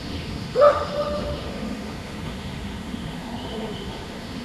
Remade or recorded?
remade